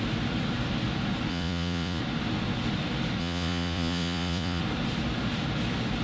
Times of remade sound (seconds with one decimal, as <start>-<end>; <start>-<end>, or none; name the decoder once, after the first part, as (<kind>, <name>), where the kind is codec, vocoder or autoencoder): 1.3-2.0 (vocoder, Vocos); 3.2-4.6

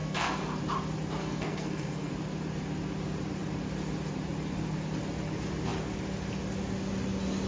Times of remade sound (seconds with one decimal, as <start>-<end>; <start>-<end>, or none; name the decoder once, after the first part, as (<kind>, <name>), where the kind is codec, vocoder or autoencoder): 0.0-0.6 (codec, SNAC); 1.2-2.1

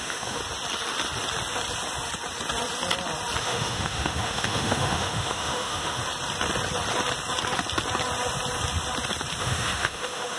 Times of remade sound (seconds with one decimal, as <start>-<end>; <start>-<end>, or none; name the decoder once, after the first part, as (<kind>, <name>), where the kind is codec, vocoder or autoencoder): 0.0-0.4 (autoencoder, DAC-VAE); 3.4-6.0; 9.4-10.4